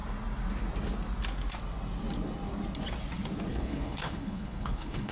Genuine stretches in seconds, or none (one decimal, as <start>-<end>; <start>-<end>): 0.0-3.5